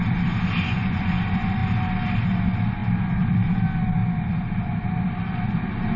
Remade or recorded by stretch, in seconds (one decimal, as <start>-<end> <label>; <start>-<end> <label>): 0.0-0.7 recorded; 0.7-1.2 remade; 1.2-6.0 recorded